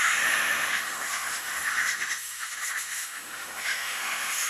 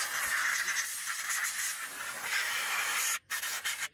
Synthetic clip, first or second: first